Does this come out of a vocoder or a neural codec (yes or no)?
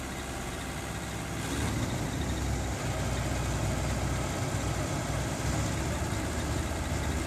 no